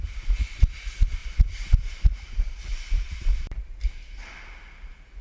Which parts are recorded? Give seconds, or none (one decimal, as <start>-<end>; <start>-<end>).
0.0-1.2; 4.3-5.2

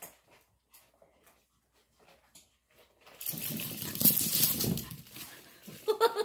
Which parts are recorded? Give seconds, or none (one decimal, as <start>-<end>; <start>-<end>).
0.0-6.2

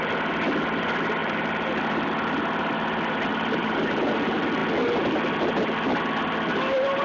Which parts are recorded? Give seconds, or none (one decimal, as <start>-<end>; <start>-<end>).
0.0-1.2; 1.8-3.3; 4.1-7.0

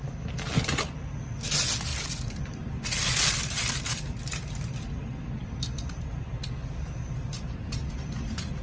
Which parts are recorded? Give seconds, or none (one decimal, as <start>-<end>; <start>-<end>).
0.0-1.9; 2.8-3.4; 4.2-5.4; 7.9-8.6

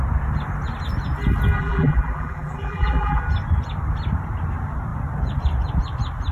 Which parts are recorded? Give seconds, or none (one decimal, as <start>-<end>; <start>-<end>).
0.0-1.6; 3.2-6.3